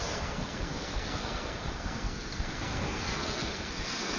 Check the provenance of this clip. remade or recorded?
remade